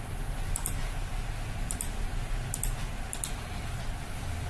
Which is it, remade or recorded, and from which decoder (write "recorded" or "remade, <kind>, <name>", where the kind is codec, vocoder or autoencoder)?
recorded